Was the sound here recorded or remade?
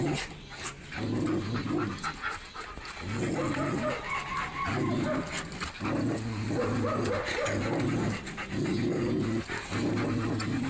recorded